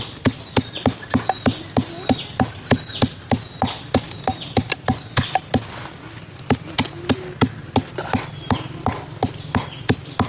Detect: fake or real real